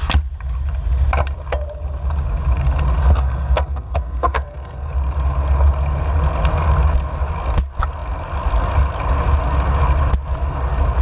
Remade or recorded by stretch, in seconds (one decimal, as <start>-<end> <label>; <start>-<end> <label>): 0.0-3.0 recorded; 3.0-4.9 remade; 4.9-11.0 recorded